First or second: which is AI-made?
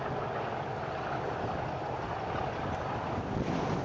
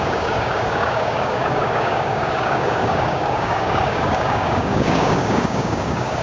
second